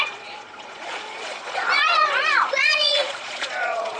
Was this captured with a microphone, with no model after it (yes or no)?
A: no